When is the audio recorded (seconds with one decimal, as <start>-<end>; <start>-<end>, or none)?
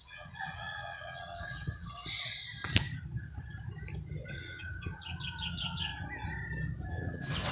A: 2.0-4.3; 5.9-6.9